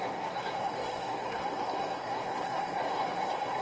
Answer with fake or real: fake